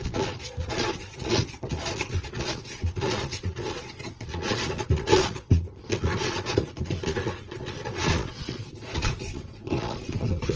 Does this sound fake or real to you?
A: fake